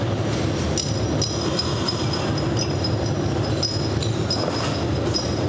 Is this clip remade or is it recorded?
recorded